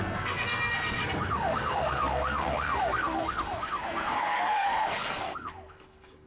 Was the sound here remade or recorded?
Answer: remade